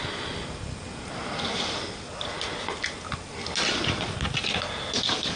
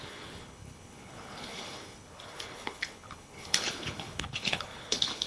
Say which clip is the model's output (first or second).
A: second